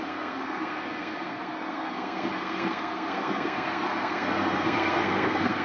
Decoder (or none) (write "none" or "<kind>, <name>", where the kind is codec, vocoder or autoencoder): codec, SNAC